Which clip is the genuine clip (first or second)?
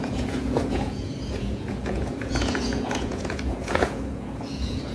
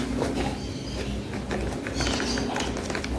second